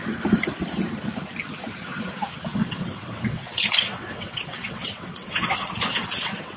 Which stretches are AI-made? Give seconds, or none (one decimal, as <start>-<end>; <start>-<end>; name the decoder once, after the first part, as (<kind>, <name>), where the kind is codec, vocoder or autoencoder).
2.6-6.6 (vocoder, WaveNeXt)

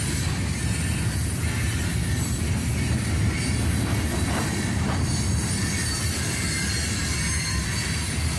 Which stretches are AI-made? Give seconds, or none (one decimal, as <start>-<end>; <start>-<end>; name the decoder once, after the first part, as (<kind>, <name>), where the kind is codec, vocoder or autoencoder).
none

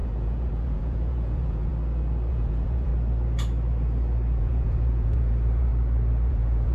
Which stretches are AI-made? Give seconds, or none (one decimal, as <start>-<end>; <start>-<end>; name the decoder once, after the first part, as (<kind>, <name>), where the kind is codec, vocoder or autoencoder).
0.0-1.7 (vocoder, Vocos); 2.3-2.9; 4.4-5.7; 6.3-6.7

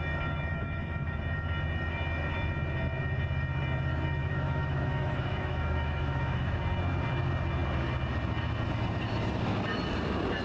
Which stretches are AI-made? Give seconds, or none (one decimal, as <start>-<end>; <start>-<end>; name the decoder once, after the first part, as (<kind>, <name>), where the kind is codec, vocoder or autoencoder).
0.5-1.2 (autoencoder, DAC-VAE); 4.2-6.6

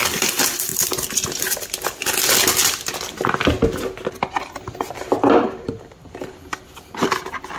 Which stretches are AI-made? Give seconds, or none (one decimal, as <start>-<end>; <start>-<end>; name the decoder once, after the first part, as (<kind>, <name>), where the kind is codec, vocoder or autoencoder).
0.0-0.7 (vocoder, BigVGAN v2); 5.3-7.6

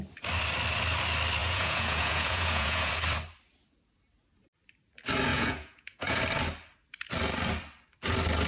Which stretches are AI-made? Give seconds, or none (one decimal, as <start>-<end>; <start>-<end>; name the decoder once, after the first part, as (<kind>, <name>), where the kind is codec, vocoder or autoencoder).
1.4-2.9 (vocoder, Vocos); 5.3-6.2

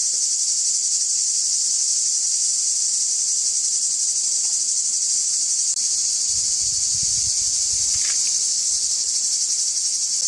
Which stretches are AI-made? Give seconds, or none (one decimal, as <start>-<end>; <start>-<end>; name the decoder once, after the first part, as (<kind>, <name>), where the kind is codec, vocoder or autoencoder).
8.5-9.1 (codec, HILCodec)